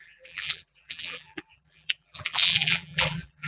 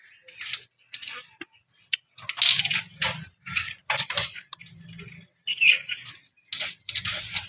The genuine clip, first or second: second